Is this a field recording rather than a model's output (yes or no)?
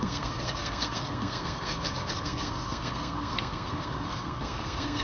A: no